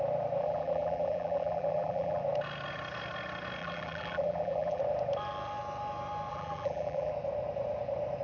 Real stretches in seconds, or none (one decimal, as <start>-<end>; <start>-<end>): 0.0-0.4; 2.2-3.6; 4.8-6.3; 7.1-8.2